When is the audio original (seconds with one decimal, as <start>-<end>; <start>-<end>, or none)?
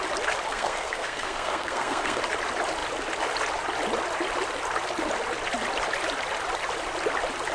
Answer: 0.0-0.5; 2.2-7.5